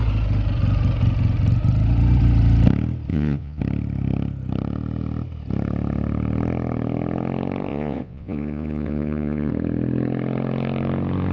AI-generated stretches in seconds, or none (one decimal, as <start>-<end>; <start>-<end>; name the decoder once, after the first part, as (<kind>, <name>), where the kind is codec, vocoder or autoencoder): 3.1-3.6 (vocoder, Vocos); 7.7-9.5